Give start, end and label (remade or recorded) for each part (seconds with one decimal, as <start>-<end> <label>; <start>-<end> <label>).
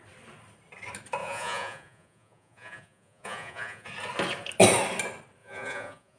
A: 0.0-1.2 recorded; 1.2-3.9 remade; 3.9-5.4 recorded; 5.4-6.2 remade